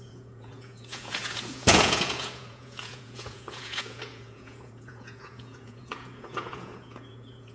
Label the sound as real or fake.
fake